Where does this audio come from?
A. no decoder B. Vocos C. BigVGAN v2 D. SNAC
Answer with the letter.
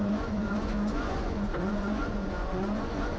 B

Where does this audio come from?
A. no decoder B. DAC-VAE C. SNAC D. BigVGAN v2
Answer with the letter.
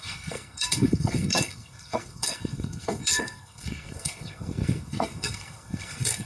C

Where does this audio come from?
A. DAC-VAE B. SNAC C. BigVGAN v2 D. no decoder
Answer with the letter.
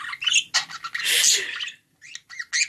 D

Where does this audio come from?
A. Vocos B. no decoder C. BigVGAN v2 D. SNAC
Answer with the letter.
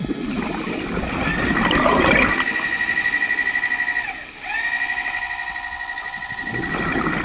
B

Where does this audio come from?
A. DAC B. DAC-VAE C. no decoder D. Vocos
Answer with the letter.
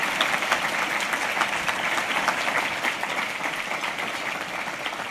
C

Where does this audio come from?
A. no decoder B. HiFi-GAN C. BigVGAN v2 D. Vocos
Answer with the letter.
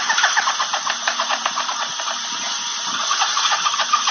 C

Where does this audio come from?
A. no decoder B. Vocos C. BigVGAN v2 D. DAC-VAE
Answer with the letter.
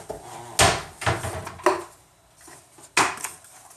A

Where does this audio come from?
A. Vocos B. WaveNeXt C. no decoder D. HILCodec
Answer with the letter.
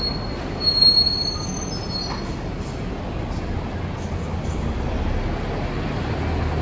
C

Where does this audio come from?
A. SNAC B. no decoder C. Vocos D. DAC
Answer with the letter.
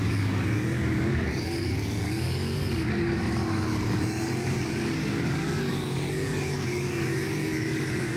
D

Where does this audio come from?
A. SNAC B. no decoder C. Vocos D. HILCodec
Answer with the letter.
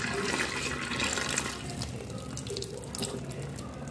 B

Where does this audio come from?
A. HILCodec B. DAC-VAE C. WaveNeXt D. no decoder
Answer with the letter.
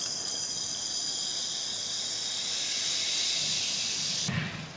D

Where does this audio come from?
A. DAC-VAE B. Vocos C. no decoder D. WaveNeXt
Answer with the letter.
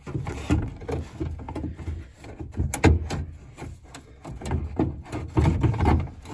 C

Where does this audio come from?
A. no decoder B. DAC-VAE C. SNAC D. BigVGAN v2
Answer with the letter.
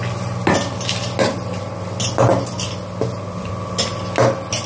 A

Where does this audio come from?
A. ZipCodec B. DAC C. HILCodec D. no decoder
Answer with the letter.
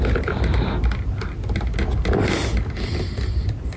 D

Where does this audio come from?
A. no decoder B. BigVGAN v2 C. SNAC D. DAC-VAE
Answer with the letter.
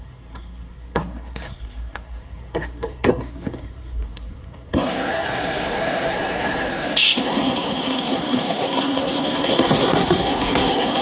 C